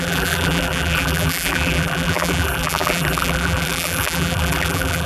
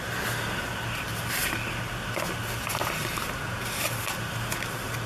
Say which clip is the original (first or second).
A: second